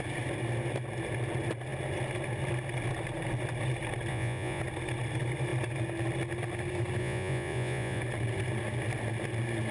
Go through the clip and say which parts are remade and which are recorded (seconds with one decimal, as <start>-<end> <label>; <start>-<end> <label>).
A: 0.0-4.1 recorded; 4.1-4.6 remade; 4.6-7.0 recorded; 7.0-8.0 remade; 8.0-9.7 recorded